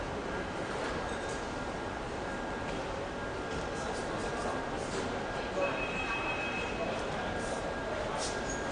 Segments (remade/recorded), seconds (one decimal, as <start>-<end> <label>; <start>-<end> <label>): 0.0-2.3 remade; 2.3-5.4 recorded; 5.4-8.7 remade

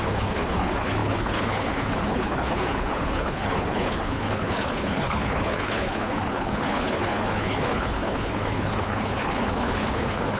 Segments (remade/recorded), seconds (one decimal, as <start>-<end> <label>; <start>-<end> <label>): 0.0-10.4 remade

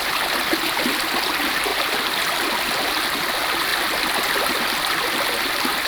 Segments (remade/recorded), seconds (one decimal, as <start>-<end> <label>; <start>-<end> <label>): 0.0-5.9 recorded

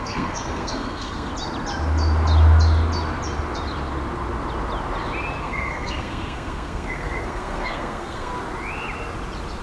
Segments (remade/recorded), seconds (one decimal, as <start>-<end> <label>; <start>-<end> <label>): 0.0-1.3 remade; 1.3-5.4 recorded; 5.4-8.3 remade; 8.3-9.6 recorded

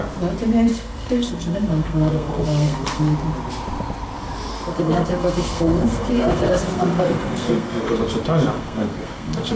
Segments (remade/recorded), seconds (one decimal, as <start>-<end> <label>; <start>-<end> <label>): 0.0-0.7 recorded; 0.7-3.0 remade; 3.0-4.5 recorded; 4.5-8.0 remade; 8.0-8.5 recorded; 8.5-9.6 remade

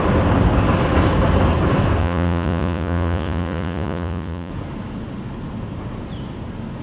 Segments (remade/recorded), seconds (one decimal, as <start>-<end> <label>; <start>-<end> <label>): 0.0-2.0 recorded; 2.0-4.5 remade; 4.5-6.8 recorded

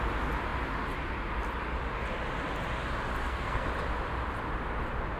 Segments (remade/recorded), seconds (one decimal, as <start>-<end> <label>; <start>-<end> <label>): 0.0-3.2 recorded; 3.2-3.7 remade; 3.7-5.2 recorded

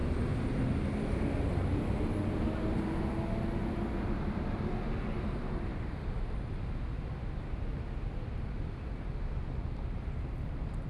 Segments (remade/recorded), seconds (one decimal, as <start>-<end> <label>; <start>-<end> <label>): 0.0-10.9 recorded